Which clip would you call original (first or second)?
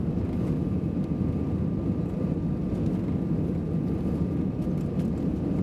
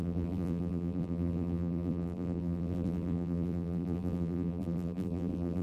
first